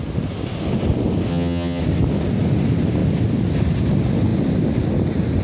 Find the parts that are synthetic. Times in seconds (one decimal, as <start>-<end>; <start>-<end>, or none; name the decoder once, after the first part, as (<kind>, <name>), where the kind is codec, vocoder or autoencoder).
1.3-1.8 (vocoder, HiFi-GAN)